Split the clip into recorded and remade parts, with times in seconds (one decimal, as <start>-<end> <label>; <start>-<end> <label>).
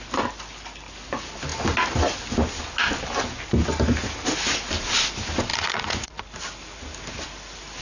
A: 0.0-5.5 recorded; 5.5-6.2 remade; 6.2-7.8 recorded